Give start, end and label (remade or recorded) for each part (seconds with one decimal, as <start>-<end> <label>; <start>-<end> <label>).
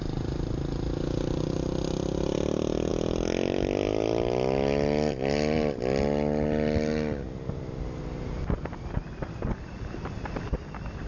0.0-11.1 recorded